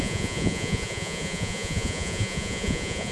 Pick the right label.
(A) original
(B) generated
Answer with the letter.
B